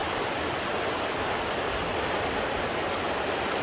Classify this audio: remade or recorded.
recorded